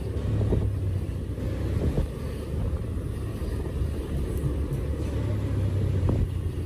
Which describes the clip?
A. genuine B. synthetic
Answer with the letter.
A